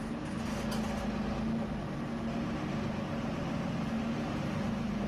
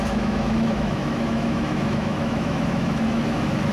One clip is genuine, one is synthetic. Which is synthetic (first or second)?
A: second